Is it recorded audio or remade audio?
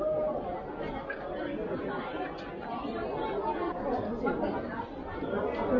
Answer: recorded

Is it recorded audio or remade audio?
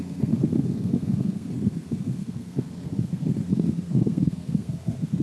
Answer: remade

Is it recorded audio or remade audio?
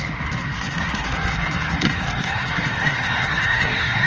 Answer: remade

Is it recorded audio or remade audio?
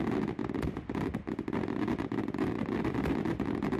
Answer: recorded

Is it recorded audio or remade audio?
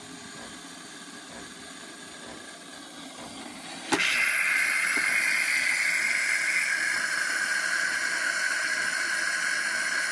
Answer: recorded